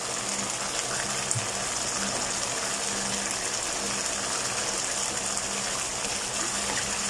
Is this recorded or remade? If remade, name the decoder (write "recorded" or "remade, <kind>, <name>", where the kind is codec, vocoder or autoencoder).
recorded